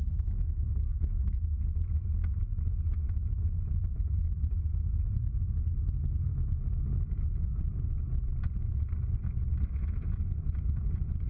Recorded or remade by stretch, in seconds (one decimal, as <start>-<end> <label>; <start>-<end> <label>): 0.0-1.4 remade; 1.4-11.3 recorded